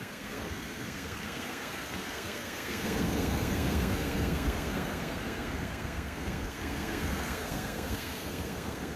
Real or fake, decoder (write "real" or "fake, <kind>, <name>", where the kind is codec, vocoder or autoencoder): fake, codec, SNAC